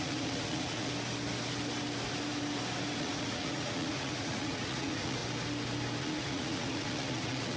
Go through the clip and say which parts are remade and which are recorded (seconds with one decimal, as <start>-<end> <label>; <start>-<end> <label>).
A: 0.0-0.9 remade; 0.9-3.0 recorded; 3.0-5.2 remade; 5.2-6.0 recorded; 6.0-7.6 remade